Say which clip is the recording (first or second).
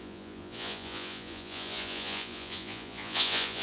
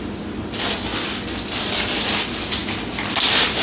second